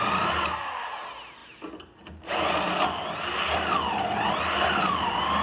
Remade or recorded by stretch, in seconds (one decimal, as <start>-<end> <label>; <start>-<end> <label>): 0.0-5.4 recorded